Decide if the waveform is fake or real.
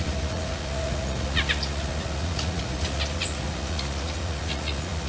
fake